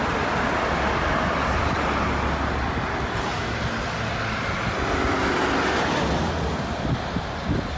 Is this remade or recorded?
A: recorded